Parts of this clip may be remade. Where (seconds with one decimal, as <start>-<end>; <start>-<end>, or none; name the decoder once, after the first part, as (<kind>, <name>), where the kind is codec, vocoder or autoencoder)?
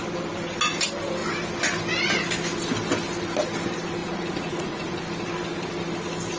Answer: 4.0-5.0 (vocoder, Vocos)